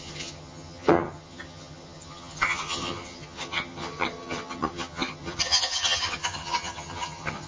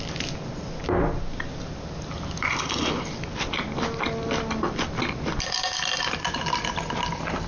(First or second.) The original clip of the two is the second